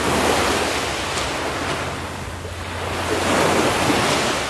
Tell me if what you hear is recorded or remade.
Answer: recorded